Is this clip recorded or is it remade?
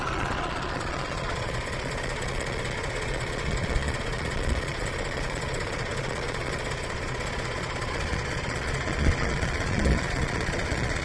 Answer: remade